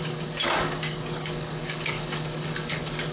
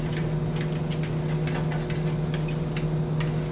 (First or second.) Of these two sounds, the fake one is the first